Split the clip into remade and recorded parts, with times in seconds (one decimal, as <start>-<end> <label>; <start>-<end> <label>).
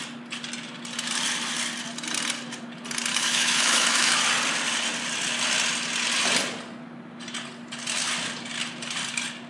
0.0-3.1 recorded; 3.1-4.1 remade; 4.1-9.5 recorded